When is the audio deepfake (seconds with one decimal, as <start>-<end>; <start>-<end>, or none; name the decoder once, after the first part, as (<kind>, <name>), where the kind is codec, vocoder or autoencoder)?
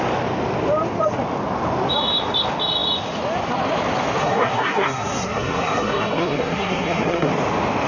4.2-7.3 (codec, SNAC)